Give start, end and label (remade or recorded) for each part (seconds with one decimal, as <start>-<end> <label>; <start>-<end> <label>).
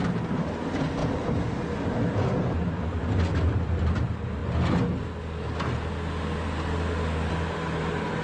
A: 0.0-1.0 recorded; 1.0-4.0 remade; 4.0-8.2 recorded